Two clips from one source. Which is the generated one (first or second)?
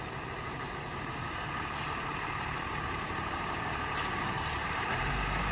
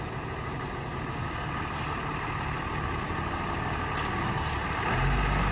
first